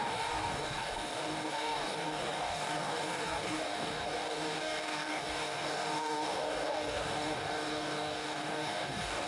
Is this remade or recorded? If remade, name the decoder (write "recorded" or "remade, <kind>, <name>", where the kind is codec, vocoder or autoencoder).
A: remade, codec, DAC